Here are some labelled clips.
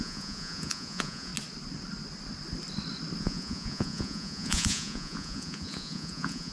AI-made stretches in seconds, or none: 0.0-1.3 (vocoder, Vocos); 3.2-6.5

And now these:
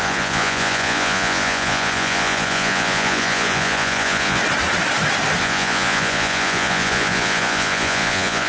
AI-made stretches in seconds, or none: 0.0-4.4 (vocoder, Vocos); 5.4-8.5

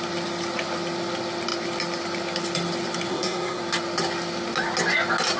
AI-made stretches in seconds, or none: 3.1-3.6 (codec, SNAC)

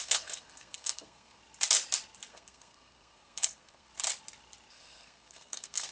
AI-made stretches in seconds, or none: 0.0-1.4 (codec, SNAC); 2.3-3.9; 4.7-5.9

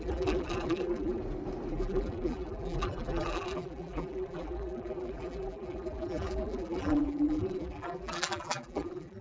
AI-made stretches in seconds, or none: 0.0-1.2 (vocoder, BigVGAN v2); 1.7-9.2